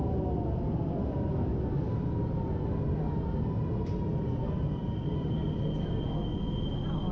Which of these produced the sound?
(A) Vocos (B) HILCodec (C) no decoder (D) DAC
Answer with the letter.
C